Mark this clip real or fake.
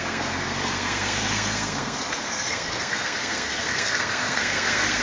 fake